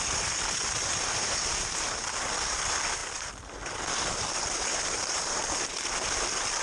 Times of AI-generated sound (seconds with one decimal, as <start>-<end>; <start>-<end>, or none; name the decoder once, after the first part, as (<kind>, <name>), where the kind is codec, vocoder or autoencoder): none